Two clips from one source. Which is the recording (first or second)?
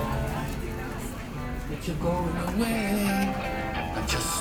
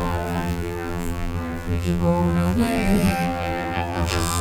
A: first